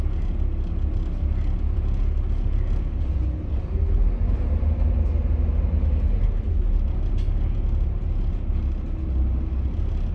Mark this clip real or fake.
real